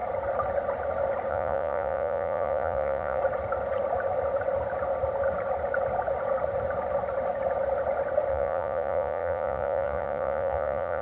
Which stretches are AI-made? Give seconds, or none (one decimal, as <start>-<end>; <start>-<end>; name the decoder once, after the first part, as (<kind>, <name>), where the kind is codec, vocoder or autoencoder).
1.3-3.2 (vocoder, Vocos); 8.3-11.0